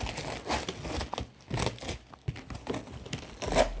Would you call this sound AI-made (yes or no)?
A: no